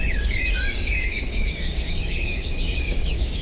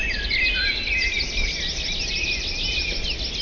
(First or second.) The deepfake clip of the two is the first